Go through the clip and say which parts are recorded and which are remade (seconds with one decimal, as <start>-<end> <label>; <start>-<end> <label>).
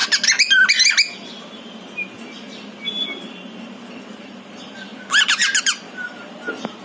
0.0-4.1 recorded; 4.1-4.9 remade; 4.9-5.6 recorded; 5.6-6.8 remade